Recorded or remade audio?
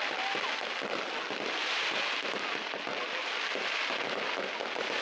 recorded